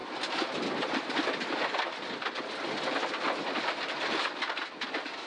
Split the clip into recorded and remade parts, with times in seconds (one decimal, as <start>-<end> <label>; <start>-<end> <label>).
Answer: 0.0-5.3 recorded

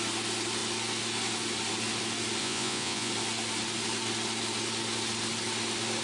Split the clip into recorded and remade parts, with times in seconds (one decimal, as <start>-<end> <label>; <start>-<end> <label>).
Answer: 0.0-2.4 recorded; 2.4-3.1 remade; 3.1-6.0 recorded

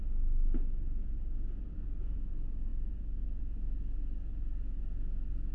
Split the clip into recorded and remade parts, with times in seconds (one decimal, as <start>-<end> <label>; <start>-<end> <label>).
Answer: 0.0-5.5 recorded

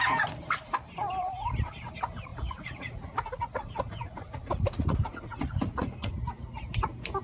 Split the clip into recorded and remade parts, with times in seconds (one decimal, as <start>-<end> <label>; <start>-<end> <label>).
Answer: 0.0-2.3 recorded; 2.3-6.1 remade; 6.1-7.2 recorded

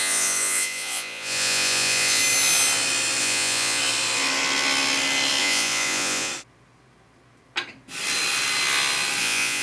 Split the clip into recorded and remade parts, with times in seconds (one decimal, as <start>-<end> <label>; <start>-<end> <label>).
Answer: 0.0-2.2 remade; 2.2-3.2 recorded; 3.2-3.8 remade; 3.8-5.4 recorded; 5.4-6.3 remade; 6.3-9.2 recorded; 9.2-9.6 remade